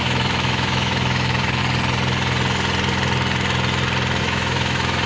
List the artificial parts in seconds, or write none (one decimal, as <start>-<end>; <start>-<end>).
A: 0.0-1.6; 4.2-5.1